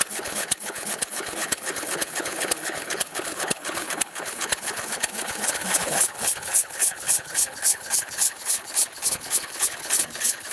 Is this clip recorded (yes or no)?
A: no